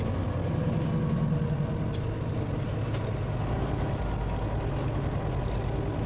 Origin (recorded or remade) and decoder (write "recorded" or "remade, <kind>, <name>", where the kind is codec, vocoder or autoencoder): recorded